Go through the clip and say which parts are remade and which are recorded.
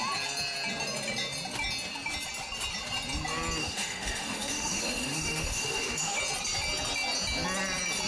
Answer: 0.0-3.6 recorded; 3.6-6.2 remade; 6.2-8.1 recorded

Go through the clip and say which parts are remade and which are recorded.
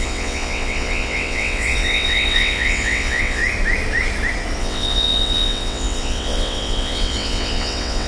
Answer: 0.0-3.4 remade; 3.4-4.6 recorded; 4.6-8.1 remade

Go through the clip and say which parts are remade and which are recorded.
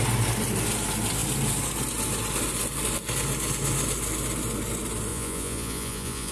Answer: 0.0-5.1 recorded; 5.1-6.3 remade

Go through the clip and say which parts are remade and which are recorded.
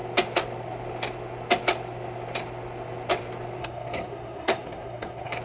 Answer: 0.0-3.6 recorded; 3.6-5.4 remade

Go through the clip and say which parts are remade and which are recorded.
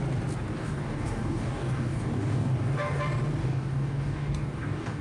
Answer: 0.0-0.5 recorded; 0.5-3.0 remade; 3.0-3.4 recorded; 3.4-5.0 remade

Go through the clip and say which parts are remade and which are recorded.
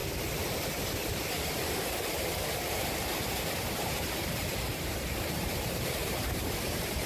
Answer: 0.0-2.2 recorded; 2.2-7.1 remade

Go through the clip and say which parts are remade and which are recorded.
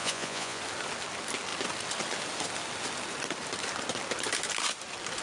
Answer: 0.0-0.6 remade; 0.6-5.2 recorded